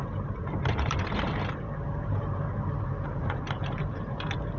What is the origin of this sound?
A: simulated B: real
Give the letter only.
A